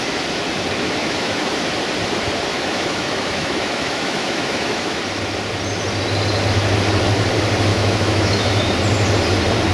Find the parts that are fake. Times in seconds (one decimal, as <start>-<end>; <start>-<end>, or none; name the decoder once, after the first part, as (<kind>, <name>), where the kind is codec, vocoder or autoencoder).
1.0-1.5 (autoencoder, DAC-VAE); 2.5-5.0; 7.7-8.7

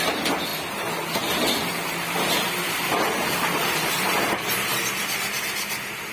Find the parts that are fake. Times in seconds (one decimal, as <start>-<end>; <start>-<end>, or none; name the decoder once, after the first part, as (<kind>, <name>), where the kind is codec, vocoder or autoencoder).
none

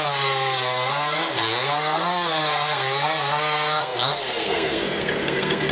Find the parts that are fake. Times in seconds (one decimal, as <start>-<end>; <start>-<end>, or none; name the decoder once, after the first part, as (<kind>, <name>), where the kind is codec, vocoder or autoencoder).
0.0-5.7 (codec, SNAC)

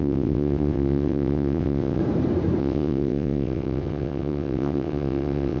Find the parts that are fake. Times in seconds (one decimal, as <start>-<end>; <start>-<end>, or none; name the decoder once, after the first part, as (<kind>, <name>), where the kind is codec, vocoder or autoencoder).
0.0-2.0 (vocoder, WaveNeXt); 2.6-5.6

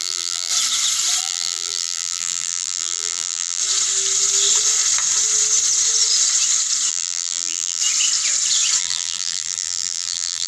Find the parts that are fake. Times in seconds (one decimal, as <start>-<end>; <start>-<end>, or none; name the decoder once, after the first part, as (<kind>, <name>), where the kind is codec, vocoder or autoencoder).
0.0-0.5 (vocoder, BigVGAN v2); 1.2-3.6; 6.9-7.8; 8.8-10.5

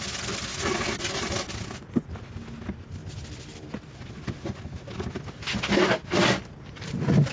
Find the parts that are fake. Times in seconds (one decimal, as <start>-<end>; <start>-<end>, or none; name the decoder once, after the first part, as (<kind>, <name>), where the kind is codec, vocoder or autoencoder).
none

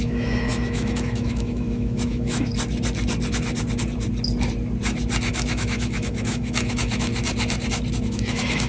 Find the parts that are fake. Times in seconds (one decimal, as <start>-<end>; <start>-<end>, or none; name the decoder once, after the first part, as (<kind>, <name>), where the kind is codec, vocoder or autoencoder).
0.0-2.5 (autoencoder, DAC-VAE); 5.3-7.1; 8.0-8.7

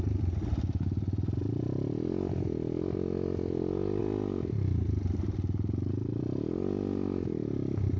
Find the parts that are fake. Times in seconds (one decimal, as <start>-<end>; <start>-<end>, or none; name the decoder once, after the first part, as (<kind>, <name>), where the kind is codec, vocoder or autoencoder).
0.0-4.0 (vocoder, BigVGAN v2); 5.9-8.0